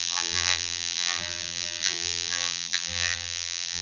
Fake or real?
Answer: fake